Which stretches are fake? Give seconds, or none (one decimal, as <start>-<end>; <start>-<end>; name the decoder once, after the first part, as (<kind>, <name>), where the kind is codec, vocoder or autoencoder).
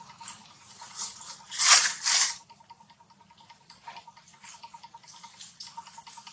0.4-1.2 (vocoder, Vocos)